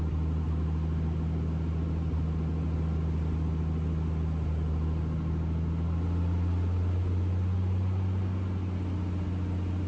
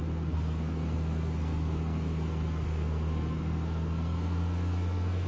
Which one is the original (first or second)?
first